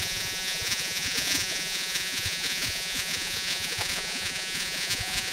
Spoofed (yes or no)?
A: yes